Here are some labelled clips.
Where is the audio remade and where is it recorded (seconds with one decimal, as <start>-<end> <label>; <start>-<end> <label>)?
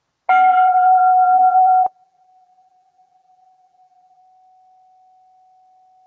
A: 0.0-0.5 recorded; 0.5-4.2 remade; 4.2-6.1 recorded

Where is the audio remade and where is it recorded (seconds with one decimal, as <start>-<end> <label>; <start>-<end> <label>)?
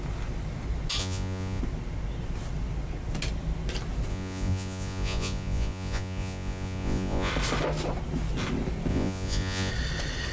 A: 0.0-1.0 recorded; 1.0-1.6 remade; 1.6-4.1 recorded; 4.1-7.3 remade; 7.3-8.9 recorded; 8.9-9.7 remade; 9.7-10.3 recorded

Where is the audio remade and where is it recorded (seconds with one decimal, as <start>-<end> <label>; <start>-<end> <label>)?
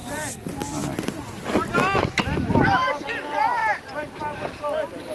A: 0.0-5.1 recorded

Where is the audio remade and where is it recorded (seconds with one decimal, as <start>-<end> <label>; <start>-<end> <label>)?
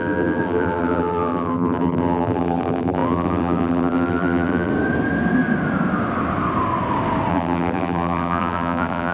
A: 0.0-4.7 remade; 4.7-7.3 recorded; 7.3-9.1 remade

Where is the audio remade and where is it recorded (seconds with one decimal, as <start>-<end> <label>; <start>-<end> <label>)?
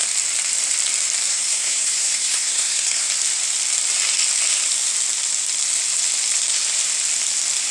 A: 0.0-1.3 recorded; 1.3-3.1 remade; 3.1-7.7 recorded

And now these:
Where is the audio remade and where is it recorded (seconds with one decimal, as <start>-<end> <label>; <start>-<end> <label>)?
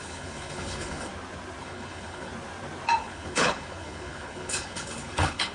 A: 0.0-1.1 remade; 1.1-1.6 recorded; 1.6-2.3 remade; 2.3-3.0 recorded; 3.0-5.5 remade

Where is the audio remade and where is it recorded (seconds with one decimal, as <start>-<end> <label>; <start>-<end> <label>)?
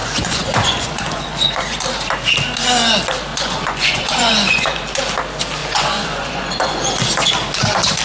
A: 0.0-1.8 remade; 1.8-3.3 recorded; 3.3-4.8 remade; 4.8-5.6 recorded; 5.6-6.8 remade; 6.8-8.0 recorded